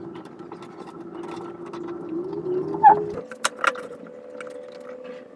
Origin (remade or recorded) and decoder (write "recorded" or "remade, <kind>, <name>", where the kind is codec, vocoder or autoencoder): recorded